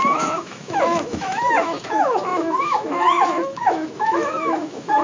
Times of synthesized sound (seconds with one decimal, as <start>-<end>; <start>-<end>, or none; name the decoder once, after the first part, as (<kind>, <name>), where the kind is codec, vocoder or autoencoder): 0.0-5.0 (autoencoder, DAC-VAE)